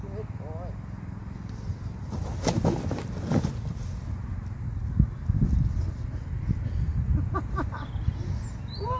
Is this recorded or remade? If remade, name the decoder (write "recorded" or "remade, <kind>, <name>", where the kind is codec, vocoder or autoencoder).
recorded